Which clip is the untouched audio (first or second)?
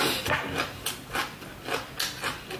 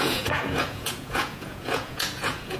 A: first